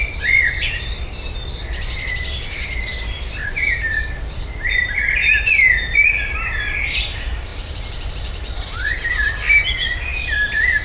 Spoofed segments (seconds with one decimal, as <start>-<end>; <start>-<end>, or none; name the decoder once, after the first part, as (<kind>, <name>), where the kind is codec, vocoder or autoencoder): 0.0-10.8 (vocoder, BigVGAN v2)